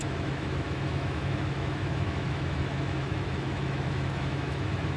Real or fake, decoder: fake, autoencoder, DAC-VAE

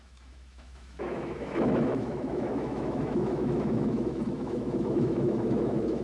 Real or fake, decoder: fake, autoencoder, DAC-VAE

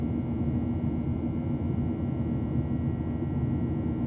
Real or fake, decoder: real